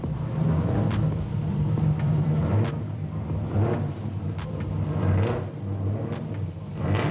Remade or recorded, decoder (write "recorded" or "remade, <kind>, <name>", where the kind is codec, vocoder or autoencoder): recorded